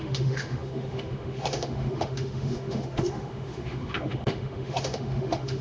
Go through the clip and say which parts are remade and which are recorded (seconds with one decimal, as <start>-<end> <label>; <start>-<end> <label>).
0.0-5.6 remade